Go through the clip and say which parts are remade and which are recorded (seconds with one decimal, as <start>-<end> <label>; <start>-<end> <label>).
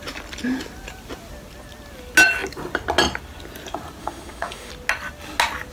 0.0-4.0 recorded; 4.0-4.7 remade; 4.7-5.7 recorded